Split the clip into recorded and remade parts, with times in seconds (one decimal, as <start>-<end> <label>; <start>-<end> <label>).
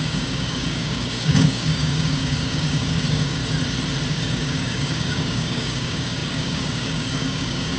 0.0-3.4 remade; 3.4-4.1 recorded; 4.1-7.8 remade